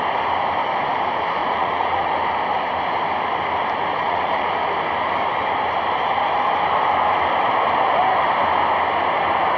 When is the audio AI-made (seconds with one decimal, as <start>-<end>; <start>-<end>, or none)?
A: 1.4-2.1; 3.9-4.5